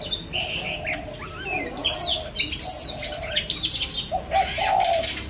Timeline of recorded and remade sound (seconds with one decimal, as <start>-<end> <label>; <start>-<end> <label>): 0.0-5.3 recorded